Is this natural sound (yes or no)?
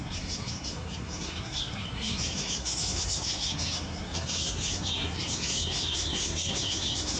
no